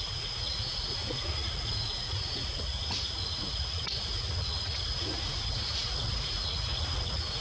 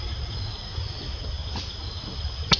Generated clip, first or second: first